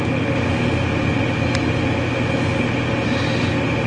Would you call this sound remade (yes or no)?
no